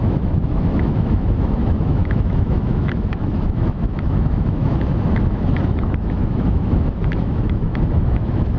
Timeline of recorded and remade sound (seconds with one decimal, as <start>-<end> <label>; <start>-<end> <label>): 0.0-8.6 remade